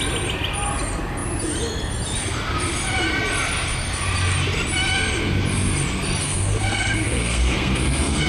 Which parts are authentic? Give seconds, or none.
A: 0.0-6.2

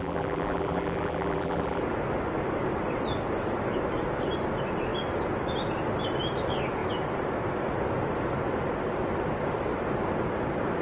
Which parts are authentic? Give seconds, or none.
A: 1.8-10.8

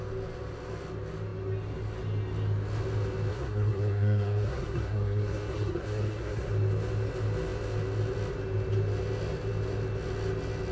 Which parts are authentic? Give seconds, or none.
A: 0.0-3.3; 6.5-10.7